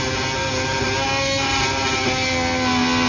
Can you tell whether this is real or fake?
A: real